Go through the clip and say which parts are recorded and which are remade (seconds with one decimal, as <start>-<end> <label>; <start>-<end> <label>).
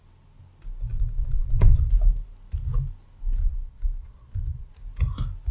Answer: 0.0-0.9 recorded; 0.9-1.9 remade; 1.9-3.4 recorded; 3.4-4.7 remade; 4.7-5.5 recorded